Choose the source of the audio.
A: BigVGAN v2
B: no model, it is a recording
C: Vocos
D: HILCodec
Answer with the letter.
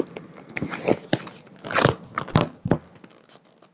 B